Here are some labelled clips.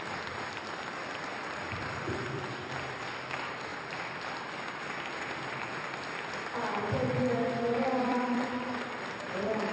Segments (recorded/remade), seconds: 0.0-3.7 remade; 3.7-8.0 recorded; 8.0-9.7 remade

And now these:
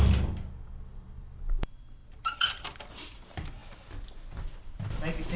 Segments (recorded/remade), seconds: 0.0-3.6 remade; 3.6-4.4 recorded; 4.4-5.4 remade

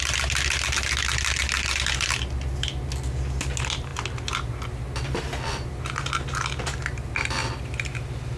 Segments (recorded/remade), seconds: 0.0-8.4 recorded

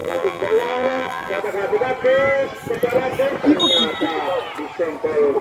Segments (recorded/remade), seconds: 0.0-1.4 remade; 1.4-5.4 recorded

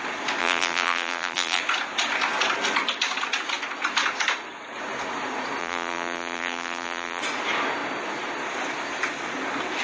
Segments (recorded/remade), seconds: 0.0-0.4 recorded; 0.4-1.6 remade; 1.6-5.6 recorded; 5.6-7.2 remade; 7.2-9.8 recorded